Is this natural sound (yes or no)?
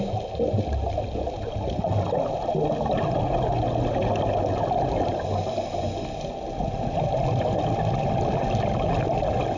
yes